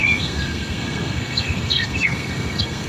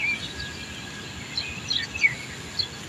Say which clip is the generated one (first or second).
first